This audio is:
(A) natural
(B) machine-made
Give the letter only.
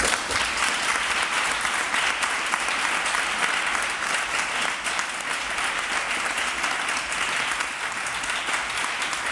A